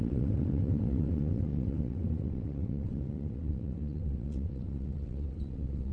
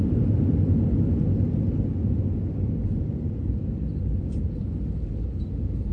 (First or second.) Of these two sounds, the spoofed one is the first